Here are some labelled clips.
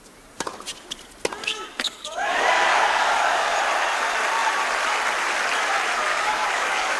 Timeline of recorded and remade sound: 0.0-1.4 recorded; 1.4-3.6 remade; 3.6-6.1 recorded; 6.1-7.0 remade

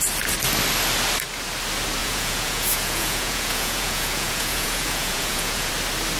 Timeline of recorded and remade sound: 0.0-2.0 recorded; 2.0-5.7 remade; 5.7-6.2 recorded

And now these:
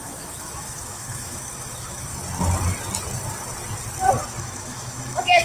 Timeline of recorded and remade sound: 0.0-2.1 remade; 2.1-4.4 recorded; 4.4-5.4 remade

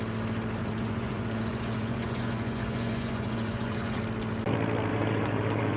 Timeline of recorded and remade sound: 0.0-0.6 recorded; 0.6-4.0 remade; 4.0-4.9 recorded; 4.9-5.8 remade